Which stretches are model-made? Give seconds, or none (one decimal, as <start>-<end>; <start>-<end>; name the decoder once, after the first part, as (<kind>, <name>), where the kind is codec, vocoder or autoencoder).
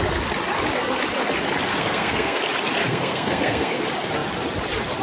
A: 1.7-2.4 (codec, SNAC); 2.8-3.8